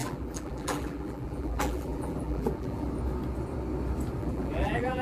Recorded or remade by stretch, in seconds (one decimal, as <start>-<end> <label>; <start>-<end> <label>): 0.0-2.9 remade; 2.9-4.2 recorded; 4.2-5.0 remade